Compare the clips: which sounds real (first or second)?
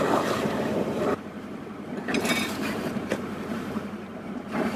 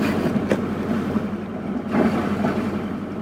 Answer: second